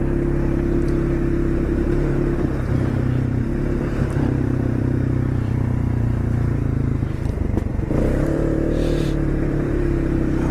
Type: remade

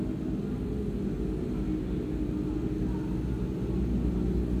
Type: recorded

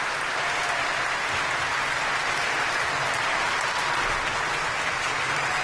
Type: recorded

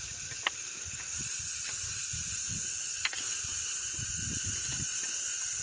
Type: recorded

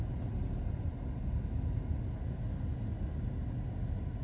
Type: recorded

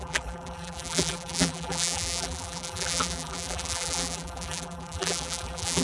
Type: remade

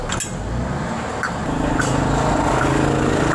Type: recorded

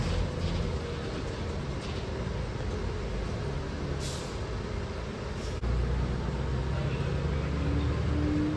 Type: recorded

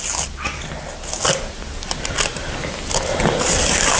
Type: recorded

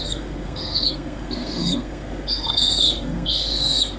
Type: remade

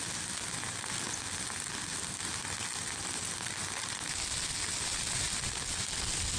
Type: recorded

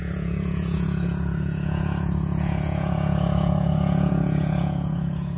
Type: remade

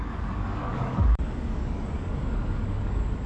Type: remade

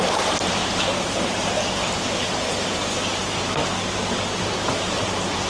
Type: remade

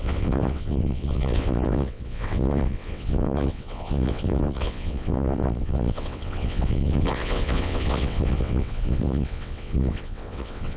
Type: remade